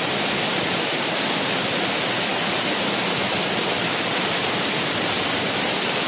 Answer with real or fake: real